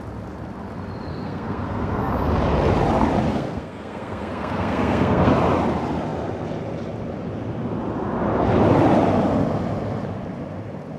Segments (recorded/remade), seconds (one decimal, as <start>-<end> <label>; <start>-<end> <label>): 0.0-1.1 recorded; 1.1-2.1 remade; 2.1-3.3 recorded; 3.3-5.3 remade; 5.3-11.0 recorded